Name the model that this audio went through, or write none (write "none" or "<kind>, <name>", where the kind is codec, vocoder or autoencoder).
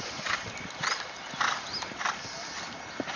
none